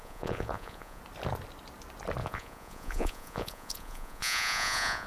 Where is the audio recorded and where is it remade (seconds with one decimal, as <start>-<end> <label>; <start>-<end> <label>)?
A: 0.0-1.0 remade; 1.0-2.2 recorded; 2.2-5.1 remade

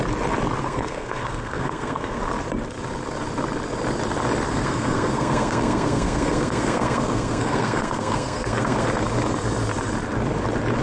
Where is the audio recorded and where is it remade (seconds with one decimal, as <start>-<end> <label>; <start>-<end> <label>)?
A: 0.0-0.6 recorded; 0.6-2.2 remade; 2.2-4.5 recorded; 4.5-8.9 remade; 8.9-10.8 recorded